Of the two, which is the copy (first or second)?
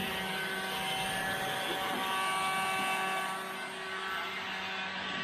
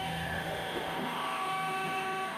second